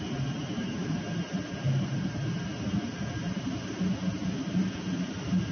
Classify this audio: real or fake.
real